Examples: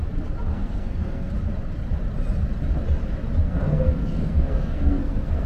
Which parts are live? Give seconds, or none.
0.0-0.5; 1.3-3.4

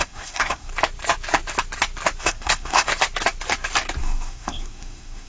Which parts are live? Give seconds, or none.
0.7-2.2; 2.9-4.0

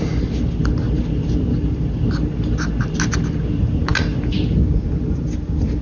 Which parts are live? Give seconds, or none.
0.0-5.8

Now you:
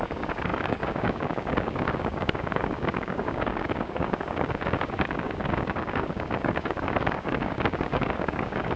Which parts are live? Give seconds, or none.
none

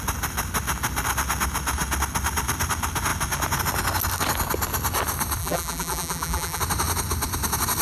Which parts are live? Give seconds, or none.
0.0-5.4; 6.6-7.8

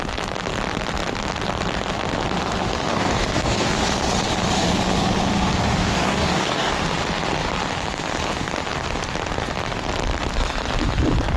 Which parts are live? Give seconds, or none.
0.0-2.9; 3.7-5.8; 6.7-11.4

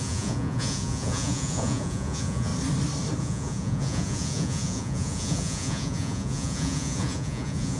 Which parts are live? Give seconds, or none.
2.5-3.2